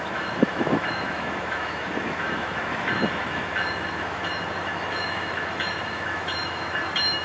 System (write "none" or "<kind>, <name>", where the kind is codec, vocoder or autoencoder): autoencoder, DAC-VAE